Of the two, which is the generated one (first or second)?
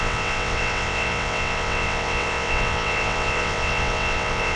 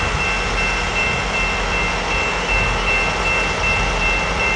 first